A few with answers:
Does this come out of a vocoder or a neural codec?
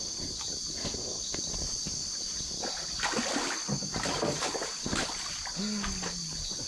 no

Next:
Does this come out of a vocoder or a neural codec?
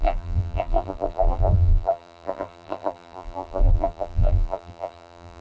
yes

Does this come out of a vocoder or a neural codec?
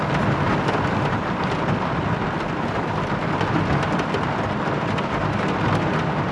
no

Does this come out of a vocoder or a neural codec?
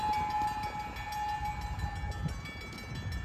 no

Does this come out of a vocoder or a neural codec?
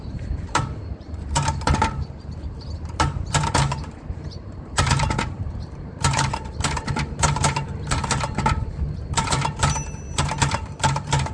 yes